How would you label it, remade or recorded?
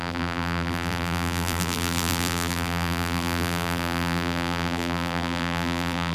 remade